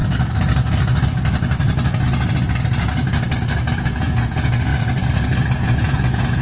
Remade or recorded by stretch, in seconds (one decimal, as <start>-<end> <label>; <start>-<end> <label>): 0.0-3.8 recorded; 3.8-4.7 remade; 4.7-5.6 recorded; 5.6-6.4 remade